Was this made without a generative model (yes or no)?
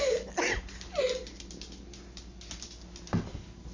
yes